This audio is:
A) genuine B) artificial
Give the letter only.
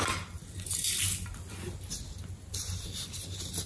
A